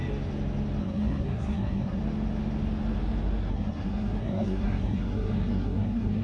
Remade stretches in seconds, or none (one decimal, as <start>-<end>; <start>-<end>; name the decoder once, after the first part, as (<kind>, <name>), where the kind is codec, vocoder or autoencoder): 0.8-2.0 (codec, SNAC); 3.5-6.2